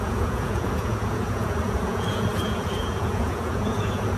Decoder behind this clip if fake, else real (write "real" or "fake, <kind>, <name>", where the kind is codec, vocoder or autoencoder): fake, vocoder, Vocos